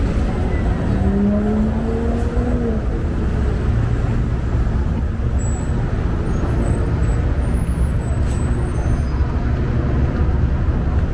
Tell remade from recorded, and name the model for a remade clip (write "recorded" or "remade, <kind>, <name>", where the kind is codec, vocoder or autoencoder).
recorded